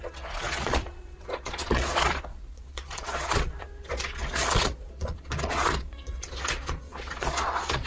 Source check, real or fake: fake